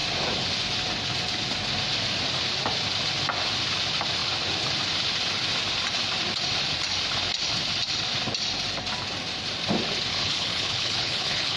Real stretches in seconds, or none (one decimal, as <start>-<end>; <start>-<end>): 0.0-10.1